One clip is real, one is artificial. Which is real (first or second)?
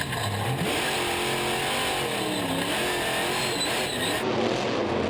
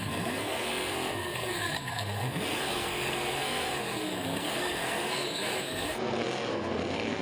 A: first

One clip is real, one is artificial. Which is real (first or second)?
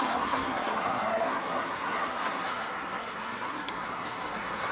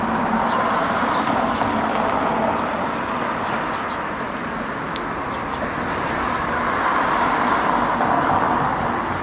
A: second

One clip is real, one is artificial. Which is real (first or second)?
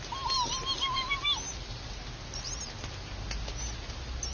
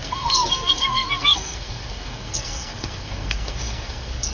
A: first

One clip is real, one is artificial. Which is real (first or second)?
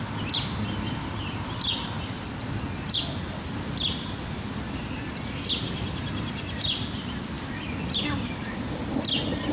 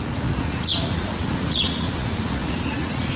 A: first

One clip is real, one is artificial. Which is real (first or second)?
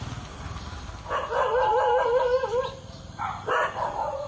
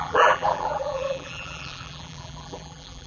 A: first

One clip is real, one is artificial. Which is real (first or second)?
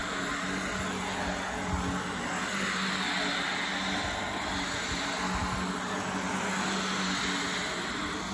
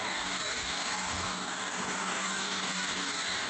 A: first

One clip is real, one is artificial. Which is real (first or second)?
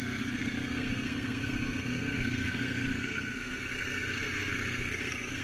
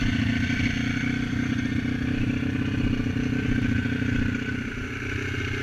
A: second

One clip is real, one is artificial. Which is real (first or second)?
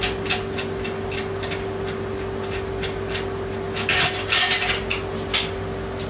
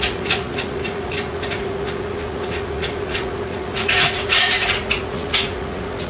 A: first